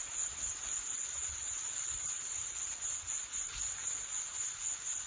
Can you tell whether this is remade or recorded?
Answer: recorded